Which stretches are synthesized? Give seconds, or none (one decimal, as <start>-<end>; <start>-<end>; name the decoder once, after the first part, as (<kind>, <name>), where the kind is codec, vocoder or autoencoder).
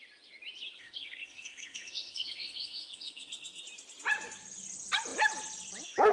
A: 0.8-3.6 (codec, SNAC)